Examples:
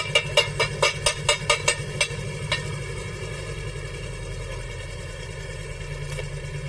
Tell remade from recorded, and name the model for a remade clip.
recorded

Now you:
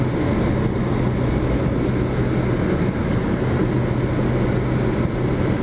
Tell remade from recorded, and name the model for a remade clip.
recorded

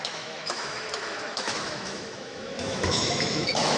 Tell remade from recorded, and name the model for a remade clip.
remade, autoencoder, DAC-VAE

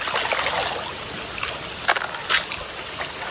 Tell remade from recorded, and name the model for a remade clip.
recorded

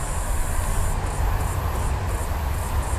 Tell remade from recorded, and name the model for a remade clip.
recorded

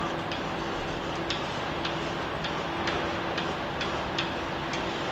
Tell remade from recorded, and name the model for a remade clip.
recorded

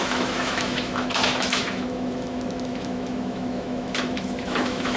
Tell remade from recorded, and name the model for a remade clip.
remade, autoencoder, DAC-VAE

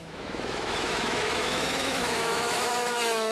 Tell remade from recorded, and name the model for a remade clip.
remade, autoencoder, DAC-VAE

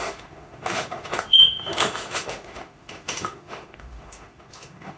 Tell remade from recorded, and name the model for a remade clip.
remade, autoencoder, DAC-VAE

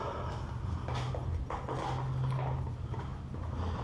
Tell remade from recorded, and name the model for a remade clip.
recorded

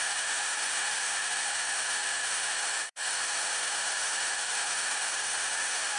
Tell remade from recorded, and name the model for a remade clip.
remade, autoencoder, DAC-VAE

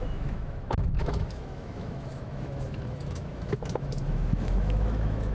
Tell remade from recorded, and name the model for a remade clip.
remade, autoencoder, DAC-VAE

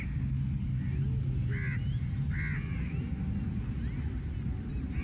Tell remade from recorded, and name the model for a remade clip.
recorded